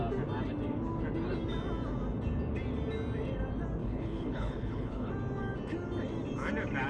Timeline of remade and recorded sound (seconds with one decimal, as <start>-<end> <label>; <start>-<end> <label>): 0.0-3.8 recorded; 3.8-5.1 remade; 5.1-6.9 recorded